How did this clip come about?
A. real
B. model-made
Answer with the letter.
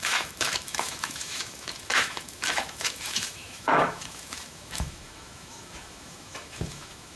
B